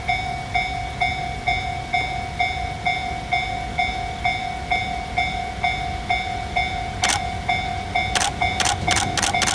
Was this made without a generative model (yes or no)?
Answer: yes